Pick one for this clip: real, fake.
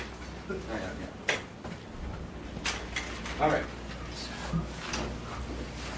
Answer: real